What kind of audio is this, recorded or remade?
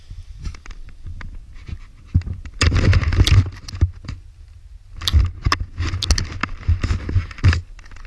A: recorded